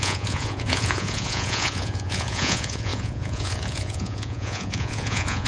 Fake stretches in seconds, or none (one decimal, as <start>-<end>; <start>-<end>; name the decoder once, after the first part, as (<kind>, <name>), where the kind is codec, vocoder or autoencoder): 0.0-5.5 (vocoder, Vocos)